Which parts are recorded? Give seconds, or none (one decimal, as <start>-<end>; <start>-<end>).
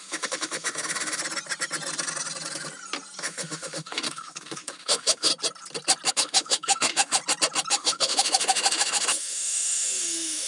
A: 1.2-3.2; 5.3-6.1; 7.2-7.7